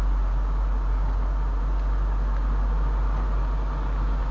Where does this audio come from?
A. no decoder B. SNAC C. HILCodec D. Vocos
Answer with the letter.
A